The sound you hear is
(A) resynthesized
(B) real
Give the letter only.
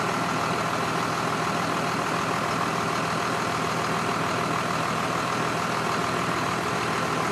B